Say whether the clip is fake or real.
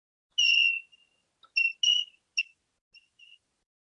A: real